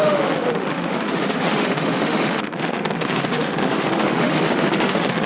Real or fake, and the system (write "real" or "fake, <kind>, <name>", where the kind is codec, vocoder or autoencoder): fake, autoencoder, DAC-VAE